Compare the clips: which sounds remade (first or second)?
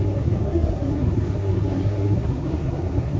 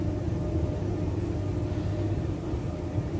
first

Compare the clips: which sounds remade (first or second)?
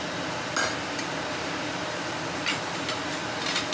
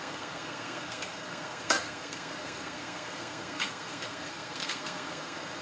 second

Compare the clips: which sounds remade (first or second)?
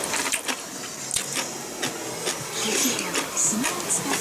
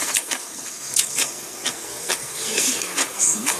second